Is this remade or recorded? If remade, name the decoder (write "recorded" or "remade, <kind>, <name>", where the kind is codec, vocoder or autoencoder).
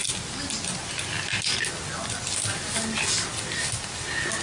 recorded